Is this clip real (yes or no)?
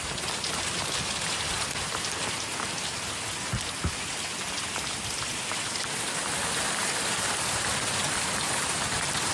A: yes